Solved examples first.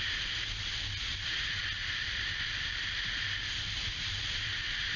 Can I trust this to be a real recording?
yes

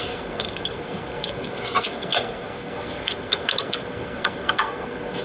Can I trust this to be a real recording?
no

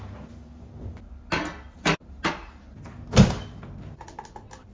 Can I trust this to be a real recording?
yes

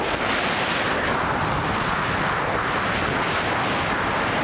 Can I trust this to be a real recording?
yes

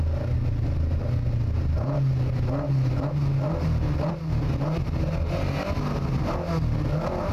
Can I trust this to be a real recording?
yes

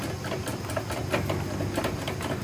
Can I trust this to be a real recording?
yes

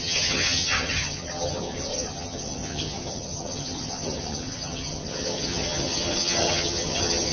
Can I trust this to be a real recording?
no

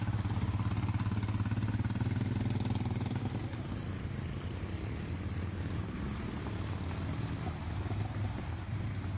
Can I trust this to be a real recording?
yes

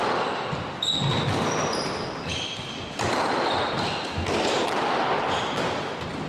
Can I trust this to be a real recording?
yes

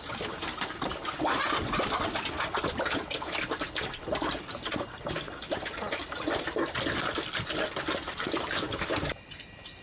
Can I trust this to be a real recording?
yes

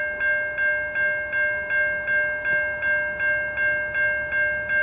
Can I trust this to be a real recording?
yes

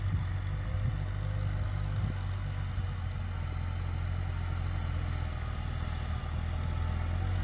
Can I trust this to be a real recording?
yes